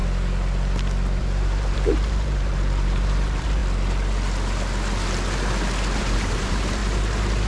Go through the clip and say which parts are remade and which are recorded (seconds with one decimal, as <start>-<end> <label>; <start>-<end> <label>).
0.0-1.2 recorded; 1.2-3.6 remade; 3.6-6.0 recorded; 6.0-6.8 remade; 6.8-7.5 recorded